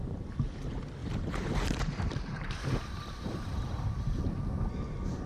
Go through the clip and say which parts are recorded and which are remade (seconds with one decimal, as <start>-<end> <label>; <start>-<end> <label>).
0.0-1.0 recorded; 1.0-4.2 remade; 4.2-5.3 recorded